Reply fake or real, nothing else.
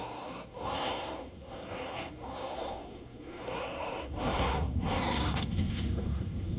fake